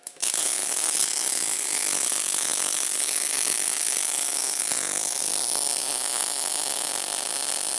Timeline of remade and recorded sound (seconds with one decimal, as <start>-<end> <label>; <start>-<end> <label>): 0.0-5.3 remade; 5.3-5.8 recorded; 5.8-6.9 remade; 6.9-7.8 recorded